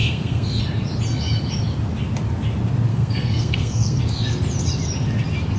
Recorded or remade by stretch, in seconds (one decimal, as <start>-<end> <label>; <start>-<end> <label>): 0.0-0.6 remade; 0.6-2.9 recorded; 2.9-4.0 remade; 4.0-5.6 recorded